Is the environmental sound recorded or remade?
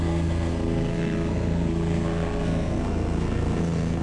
remade